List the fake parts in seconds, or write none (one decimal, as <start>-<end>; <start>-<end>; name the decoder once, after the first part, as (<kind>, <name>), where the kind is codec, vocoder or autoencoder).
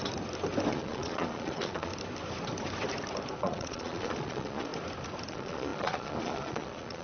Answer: 0.7-1.9 (vocoder, Vocos); 3.4-4.7; 5.3-7.0